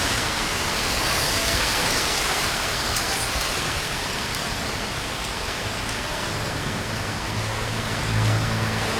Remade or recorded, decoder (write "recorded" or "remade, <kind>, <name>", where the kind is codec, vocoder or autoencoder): remade, codec, SNAC